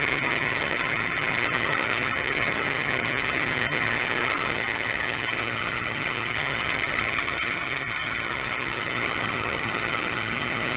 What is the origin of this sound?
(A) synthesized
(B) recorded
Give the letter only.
A